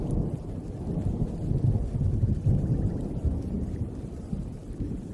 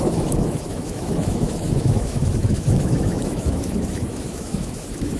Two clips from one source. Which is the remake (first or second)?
second